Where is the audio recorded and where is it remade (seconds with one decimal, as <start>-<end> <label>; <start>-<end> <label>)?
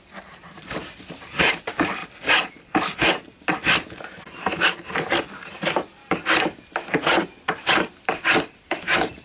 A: 0.0-2.0 remade; 2.0-5.2 recorded; 5.2-9.2 remade